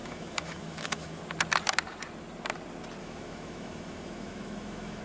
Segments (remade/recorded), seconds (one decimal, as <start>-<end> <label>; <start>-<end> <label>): 0.0-1.2 remade; 1.2-3.0 recorded; 3.0-5.0 remade